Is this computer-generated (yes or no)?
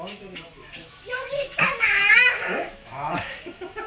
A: yes